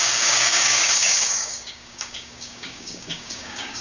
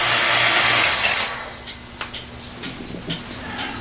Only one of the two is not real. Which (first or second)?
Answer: first